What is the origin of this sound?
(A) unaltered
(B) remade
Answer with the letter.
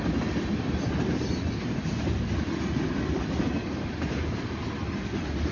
A